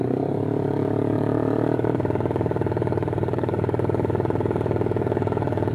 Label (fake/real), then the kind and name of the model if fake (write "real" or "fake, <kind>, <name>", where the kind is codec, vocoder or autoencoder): fake, codec, DAC